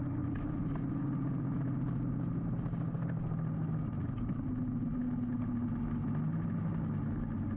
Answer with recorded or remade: recorded